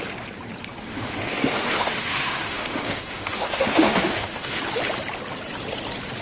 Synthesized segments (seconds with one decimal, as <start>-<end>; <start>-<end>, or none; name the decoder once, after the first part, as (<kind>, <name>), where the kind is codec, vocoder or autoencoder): 0.9-4.6 (autoencoder, DAC-VAE)